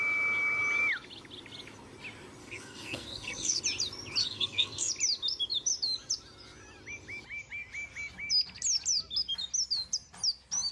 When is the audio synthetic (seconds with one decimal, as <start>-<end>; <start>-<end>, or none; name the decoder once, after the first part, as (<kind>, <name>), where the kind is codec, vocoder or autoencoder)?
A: 2.4-3.6 (codec, SNAC); 4.2-4.9